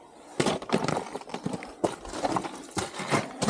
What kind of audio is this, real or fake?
real